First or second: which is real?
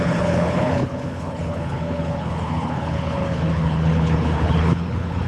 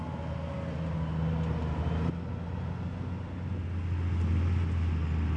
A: second